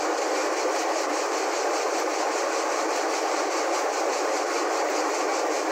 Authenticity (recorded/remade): recorded